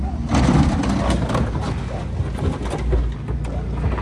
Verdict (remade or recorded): recorded